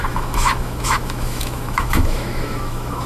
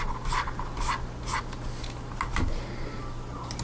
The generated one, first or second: first